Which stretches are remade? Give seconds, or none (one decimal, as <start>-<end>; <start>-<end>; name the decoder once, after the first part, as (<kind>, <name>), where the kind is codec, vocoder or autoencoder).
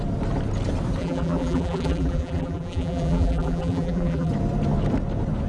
1.0-4.3 (vocoder, BigVGAN v2)